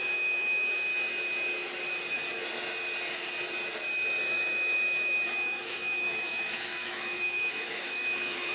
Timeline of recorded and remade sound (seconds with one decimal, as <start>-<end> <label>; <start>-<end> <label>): 0.0-0.9 remade; 0.9-4.2 recorded; 4.2-8.5 remade